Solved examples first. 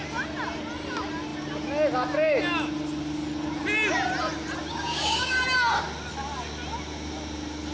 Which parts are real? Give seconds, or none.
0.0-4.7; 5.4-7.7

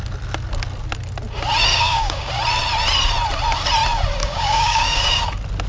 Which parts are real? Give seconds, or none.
0.0-1.7; 2.3-4.2; 5.2-5.7

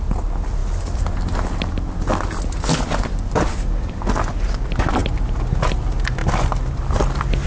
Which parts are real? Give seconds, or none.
0.0-7.5

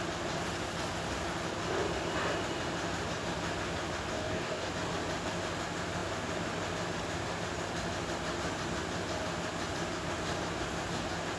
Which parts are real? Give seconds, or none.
0.0-4.1; 4.7-11.4

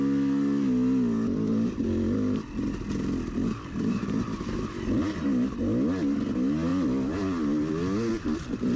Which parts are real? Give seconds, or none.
0.0-8.8